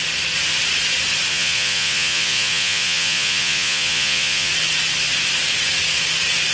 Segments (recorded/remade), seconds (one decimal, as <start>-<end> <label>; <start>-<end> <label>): 0.0-1.3 recorded; 1.3-4.5 remade; 4.5-6.5 recorded